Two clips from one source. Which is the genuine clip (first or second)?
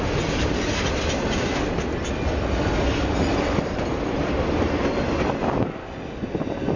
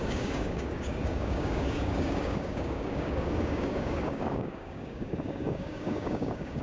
first